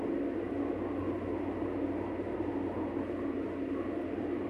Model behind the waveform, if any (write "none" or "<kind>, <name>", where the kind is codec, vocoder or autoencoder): none